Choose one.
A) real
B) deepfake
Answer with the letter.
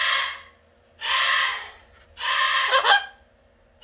A